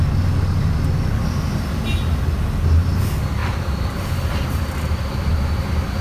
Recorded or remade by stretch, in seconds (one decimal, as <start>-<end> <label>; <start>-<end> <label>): 0.0-3.4 recorded; 3.4-5.6 remade; 5.6-6.0 recorded